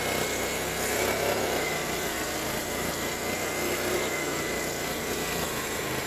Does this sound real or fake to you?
real